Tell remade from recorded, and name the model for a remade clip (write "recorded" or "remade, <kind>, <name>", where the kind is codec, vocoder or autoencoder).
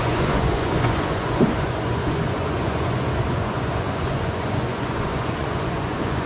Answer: remade, vocoder, Vocos